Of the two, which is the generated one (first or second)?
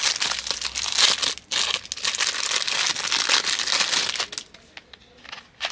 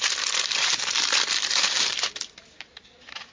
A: second